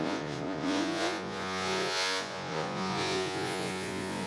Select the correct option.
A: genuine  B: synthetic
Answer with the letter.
B